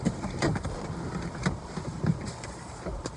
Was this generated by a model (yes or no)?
yes